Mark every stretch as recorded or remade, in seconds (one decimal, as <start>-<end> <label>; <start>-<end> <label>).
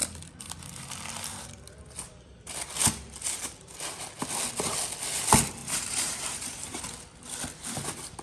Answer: 0.0-5.6 recorded; 5.6-6.8 remade; 6.8-8.2 recorded